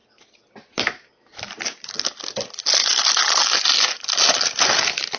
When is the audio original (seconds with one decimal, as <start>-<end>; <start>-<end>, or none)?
0.0-5.2